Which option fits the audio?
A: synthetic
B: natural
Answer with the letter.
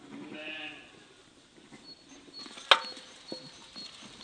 B